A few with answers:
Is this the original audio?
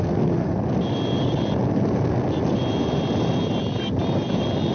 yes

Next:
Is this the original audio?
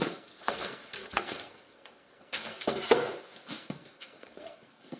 no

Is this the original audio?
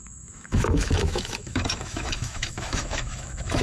no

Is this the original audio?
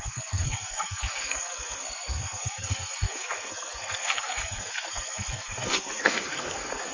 no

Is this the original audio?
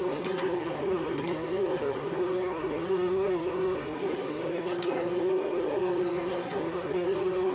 no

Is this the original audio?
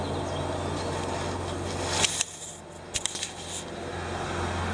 yes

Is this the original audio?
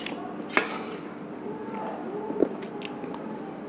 yes